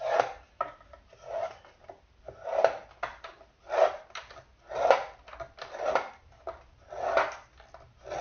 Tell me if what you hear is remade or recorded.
recorded